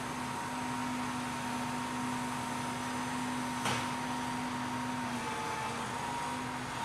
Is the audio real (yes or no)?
yes